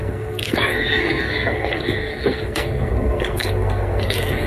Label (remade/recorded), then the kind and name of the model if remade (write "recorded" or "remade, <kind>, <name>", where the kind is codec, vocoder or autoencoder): remade, codec, SNAC